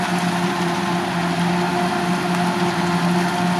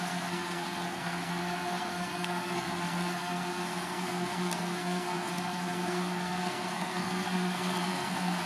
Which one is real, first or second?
first